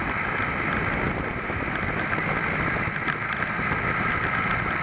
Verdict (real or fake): real